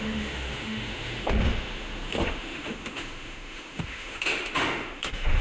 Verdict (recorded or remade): remade